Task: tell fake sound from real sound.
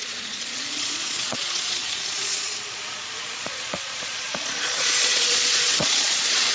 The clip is fake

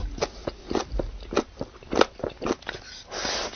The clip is real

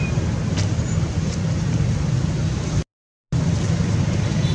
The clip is real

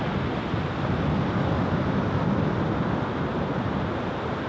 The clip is real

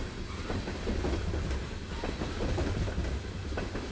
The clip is real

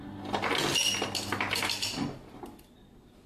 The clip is real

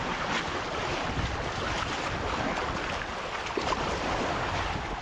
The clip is real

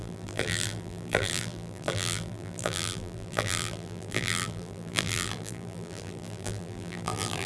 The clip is fake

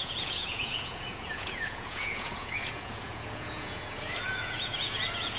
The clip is fake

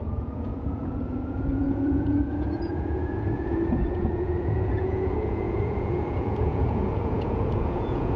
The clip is fake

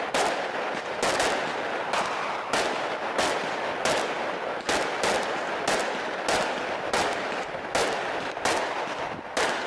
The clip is real